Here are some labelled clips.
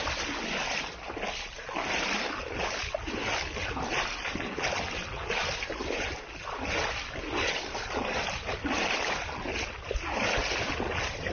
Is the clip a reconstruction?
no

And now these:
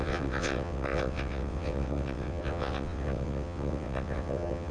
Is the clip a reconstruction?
yes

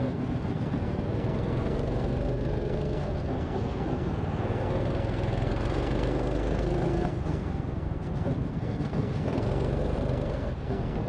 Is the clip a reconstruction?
yes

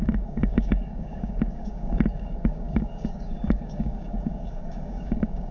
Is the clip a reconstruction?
yes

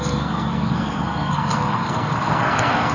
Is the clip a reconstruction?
yes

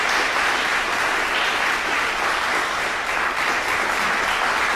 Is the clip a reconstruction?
no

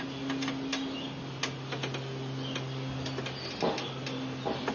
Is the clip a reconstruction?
no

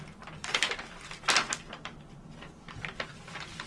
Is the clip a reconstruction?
no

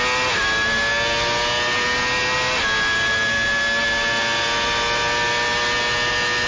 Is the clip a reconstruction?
no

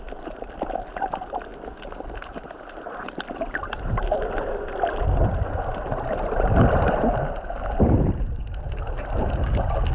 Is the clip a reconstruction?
no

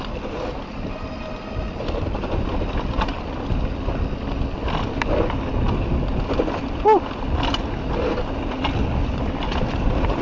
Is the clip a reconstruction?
no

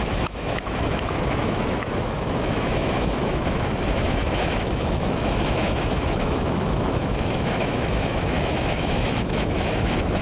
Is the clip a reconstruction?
yes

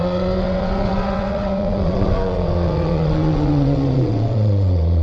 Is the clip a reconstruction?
yes